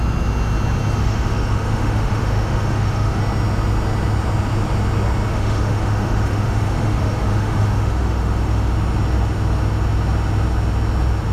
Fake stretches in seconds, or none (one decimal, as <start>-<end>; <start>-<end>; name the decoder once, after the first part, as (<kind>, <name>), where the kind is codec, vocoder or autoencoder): 1.0-3.2 (autoencoder, DAC-VAE); 5.3-8.7